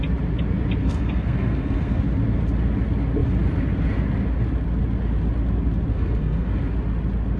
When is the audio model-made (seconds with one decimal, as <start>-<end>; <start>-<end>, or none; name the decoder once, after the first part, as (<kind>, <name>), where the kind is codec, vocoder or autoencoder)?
0.8-2.0 (codec, SNAC); 5.9-6.5